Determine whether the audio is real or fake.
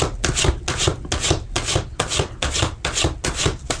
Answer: real